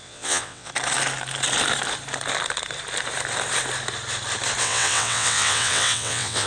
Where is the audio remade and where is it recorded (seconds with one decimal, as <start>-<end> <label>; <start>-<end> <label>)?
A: 0.0-0.7 remade; 0.7-4.6 recorded; 4.6-6.5 remade